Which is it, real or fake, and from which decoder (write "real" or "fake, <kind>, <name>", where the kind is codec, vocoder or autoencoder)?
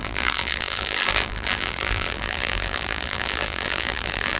fake, vocoder, BigVGAN v2